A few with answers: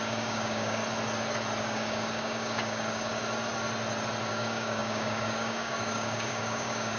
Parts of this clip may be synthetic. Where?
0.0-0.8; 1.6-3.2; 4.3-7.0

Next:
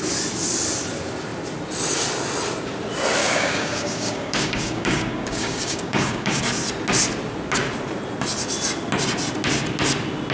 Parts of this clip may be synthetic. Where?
3.2-6.4

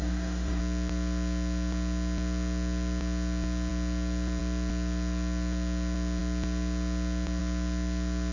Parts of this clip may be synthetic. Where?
0.0-0.6

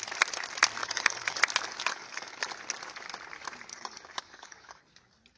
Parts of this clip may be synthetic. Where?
0.8-1.4; 1.9-2.4; 3.7-4.8